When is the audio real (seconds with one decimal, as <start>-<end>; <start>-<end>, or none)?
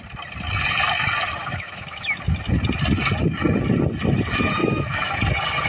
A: 0.0-1.4; 2.2-4.6; 5.1-5.7